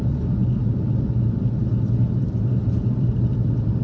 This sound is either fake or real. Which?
real